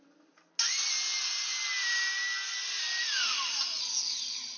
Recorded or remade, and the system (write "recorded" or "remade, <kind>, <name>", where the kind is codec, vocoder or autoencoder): recorded